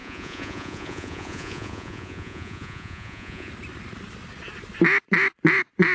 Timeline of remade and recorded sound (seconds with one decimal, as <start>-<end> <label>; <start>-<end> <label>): 0.0-3.5 remade; 3.5-5.9 recorded